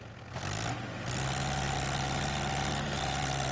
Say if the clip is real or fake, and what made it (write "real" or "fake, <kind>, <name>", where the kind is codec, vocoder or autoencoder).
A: real